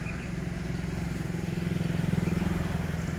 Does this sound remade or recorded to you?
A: recorded